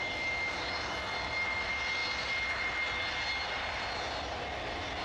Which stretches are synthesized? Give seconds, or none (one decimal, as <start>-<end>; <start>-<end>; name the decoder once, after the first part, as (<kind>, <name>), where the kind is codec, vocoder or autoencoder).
none